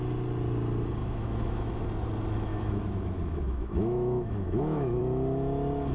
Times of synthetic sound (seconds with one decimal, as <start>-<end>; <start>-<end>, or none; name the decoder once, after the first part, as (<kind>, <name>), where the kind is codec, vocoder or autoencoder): 1.0-1.7 (autoencoder, DAC-VAE); 2.5-5.0